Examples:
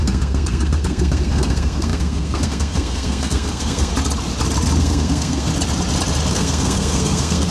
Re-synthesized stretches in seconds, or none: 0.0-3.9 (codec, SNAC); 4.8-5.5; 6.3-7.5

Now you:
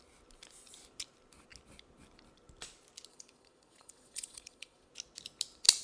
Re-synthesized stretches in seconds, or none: 3.1-4.9 (vocoder, Vocos)

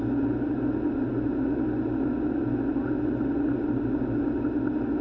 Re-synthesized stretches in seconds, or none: none

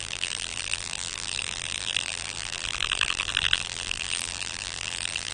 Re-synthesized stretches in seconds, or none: 0.0-5.3 (vocoder, BigVGAN v2)

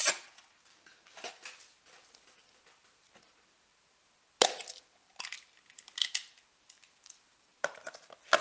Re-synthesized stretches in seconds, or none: 0.7-1.3 (codec, DAC)